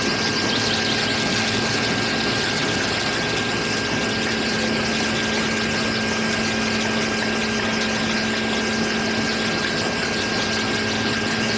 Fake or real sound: real